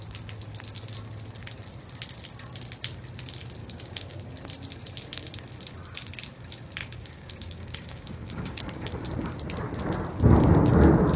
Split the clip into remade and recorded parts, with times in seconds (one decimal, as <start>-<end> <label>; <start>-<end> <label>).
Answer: 0.0-3.6 recorded; 3.6-4.3 remade; 4.3-6.8 recorded; 6.8-8.9 remade; 8.9-11.2 recorded